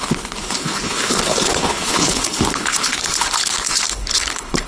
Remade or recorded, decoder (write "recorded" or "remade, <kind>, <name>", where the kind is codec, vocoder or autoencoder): remade, codec, HILCodec